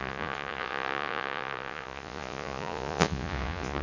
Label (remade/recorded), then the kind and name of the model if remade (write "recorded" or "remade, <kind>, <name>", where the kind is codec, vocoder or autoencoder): remade, vocoder, Vocos